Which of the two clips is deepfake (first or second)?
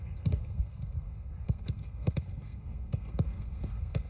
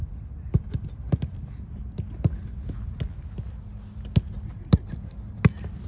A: first